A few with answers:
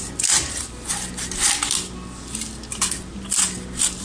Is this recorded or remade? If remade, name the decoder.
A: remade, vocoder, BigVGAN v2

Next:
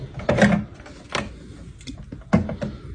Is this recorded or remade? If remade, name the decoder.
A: recorded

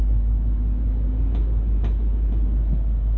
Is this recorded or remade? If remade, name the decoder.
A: recorded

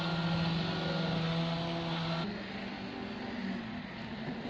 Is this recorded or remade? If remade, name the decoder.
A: recorded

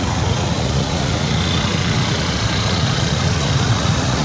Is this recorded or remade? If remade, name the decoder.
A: remade, vocoder, Vocos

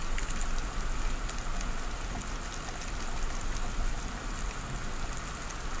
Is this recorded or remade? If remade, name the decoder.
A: recorded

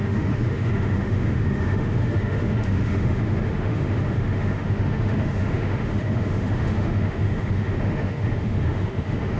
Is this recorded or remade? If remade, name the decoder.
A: remade, autoencoder, DAC-VAE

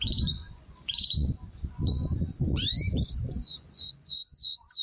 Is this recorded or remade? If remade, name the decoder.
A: remade, vocoder, Vocos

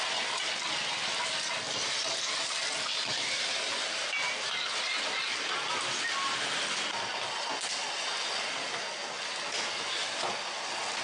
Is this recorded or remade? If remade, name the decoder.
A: recorded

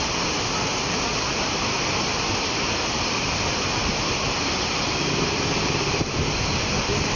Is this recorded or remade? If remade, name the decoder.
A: recorded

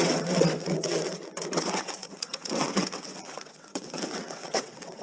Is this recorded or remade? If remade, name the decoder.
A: remade, vocoder, WaveNeXt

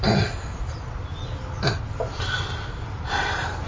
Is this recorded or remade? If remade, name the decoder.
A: recorded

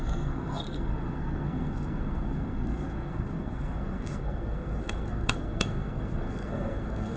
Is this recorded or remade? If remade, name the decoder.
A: remade, codec, SNAC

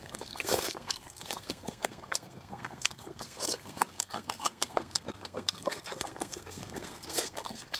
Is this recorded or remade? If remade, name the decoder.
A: remade, codec, SNAC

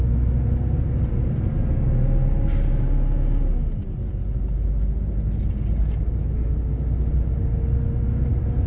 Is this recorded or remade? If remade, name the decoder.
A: recorded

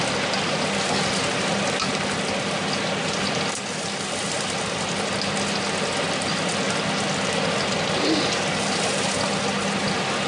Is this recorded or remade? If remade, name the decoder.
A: recorded